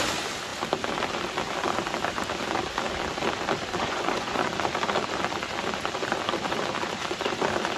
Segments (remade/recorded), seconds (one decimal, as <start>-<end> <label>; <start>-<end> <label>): 0.0-3.8 recorded; 3.8-4.5 remade; 4.5-7.8 recorded